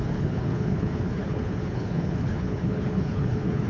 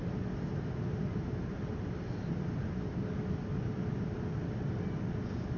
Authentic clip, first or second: second